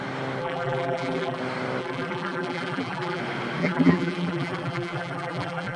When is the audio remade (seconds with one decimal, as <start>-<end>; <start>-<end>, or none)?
0.4-1.4; 1.8-3.2; 3.6-5.8